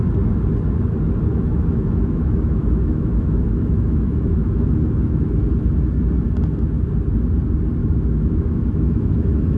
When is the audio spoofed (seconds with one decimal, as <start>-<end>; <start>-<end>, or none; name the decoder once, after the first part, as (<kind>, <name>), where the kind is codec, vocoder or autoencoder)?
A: 1.3-5.3 (autoencoder, DAC-VAE); 7.8-9.6